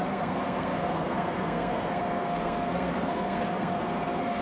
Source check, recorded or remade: remade